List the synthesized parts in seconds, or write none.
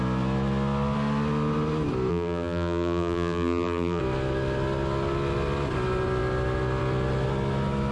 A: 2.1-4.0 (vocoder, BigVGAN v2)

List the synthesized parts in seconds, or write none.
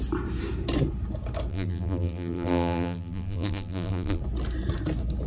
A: 1.5-4.2 (vocoder, BigVGAN v2)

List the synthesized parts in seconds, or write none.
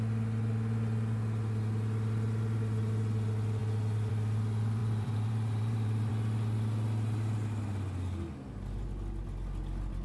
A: 4.8-6.1 (vocoder, BigVGAN v2)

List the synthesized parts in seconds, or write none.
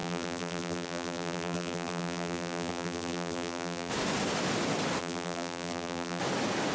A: 0.0-3.9 (vocoder, BigVGAN v2); 5.0-6.2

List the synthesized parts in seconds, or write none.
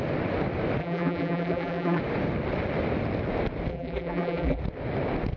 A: 0.8-2.0 (vocoder, BigVGAN v2); 3.7-4.6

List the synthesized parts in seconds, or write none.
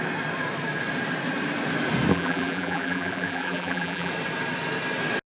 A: 2.1-4.1 (vocoder, BigVGAN v2)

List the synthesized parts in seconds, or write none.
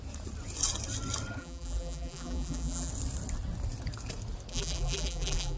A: 1.4-2.9 (vocoder, BigVGAN v2); 4.5-5.6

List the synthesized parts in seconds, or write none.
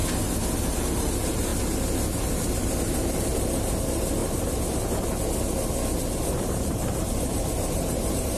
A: 0.8-1.5 (vocoder, BigVGAN v2); 3.8-4.2; 6.0-8.4